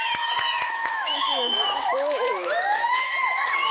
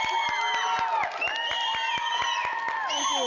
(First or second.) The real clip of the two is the second